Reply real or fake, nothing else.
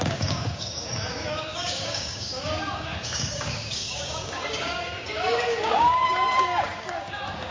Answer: fake